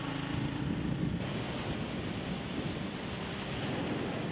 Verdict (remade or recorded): recorded